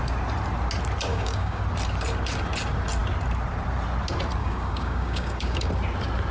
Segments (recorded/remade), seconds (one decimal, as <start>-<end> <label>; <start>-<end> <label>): 0.0-1.1 recorded; 1.1-1.6 remade; 1.6-4.4 recorded; 4.4-5.7 remade; 5.7-6.3 recorded